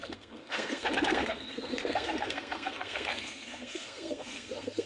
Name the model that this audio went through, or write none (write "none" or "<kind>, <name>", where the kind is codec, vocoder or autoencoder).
codec, SNAC